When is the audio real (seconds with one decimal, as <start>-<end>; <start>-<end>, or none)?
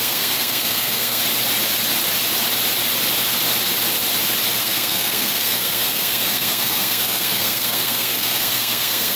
1.2-4.6